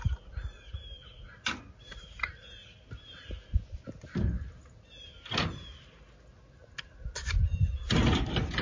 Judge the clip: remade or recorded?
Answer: recorded